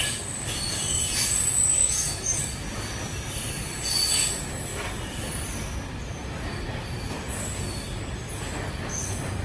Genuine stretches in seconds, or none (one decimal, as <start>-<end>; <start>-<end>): 0.0-1.8; 2.4-9.4